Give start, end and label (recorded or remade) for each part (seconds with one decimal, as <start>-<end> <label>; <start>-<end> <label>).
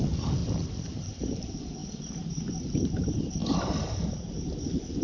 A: 0.0-0.4 recorded; 0.4-1.1 remade; 1.1-5.0 recorded